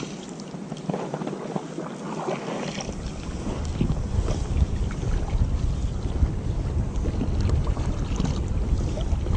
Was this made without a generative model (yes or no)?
yes